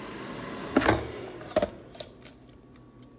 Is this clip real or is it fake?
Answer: real